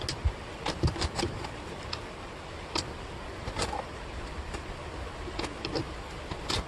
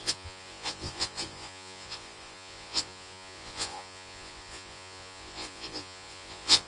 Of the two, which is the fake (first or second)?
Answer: second